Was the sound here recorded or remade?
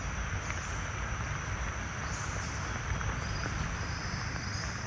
recorded